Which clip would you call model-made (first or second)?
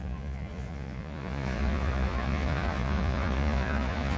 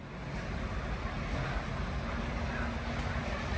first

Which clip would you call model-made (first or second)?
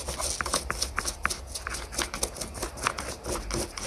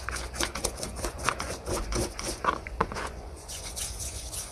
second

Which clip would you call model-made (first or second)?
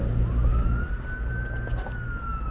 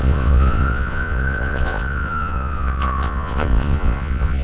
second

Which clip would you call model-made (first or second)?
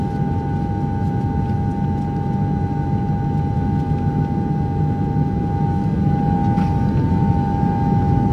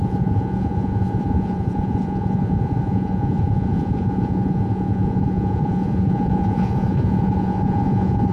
second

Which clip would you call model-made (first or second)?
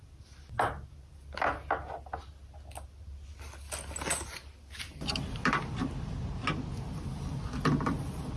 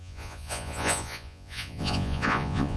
second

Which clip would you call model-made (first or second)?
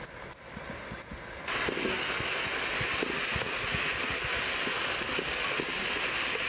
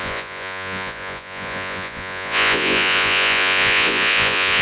second